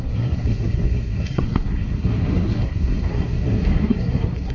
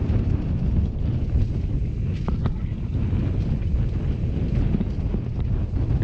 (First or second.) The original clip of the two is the second